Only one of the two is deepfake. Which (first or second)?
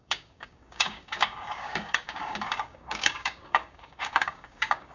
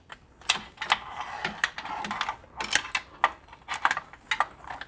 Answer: first